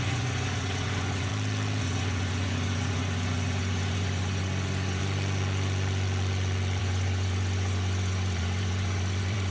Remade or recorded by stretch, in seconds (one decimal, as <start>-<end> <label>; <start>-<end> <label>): 0.0-1.3 remade; 1.3-1.8 recorded; 1.8-5.0 remade; 5.0-6.8 recorded; 6.8-9.5 remade